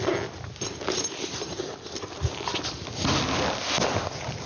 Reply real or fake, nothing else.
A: real